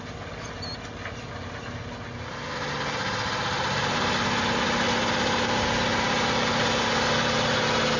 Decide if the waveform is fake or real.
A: real